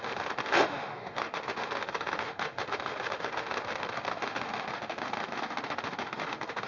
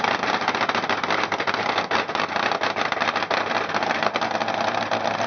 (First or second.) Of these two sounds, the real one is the second